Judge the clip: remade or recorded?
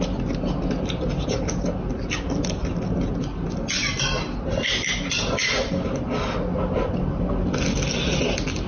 recorded